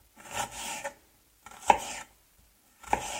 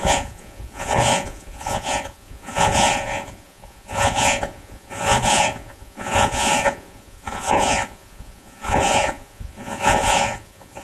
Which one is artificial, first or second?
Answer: second